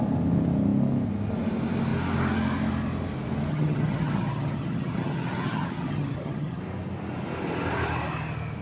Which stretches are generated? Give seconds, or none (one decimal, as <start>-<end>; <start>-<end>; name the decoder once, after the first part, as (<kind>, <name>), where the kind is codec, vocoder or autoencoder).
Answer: 3.5-6.6 (vocoder, HiFi-GAN)